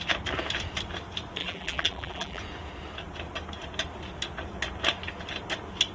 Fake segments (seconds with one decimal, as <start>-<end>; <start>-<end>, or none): 1.4-2.4